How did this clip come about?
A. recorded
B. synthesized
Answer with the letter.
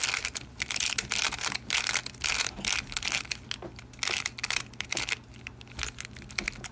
A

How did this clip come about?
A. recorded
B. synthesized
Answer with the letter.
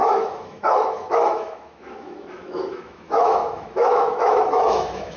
B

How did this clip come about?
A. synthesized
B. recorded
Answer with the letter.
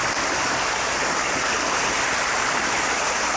B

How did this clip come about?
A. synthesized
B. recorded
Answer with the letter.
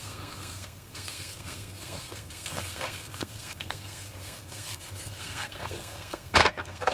A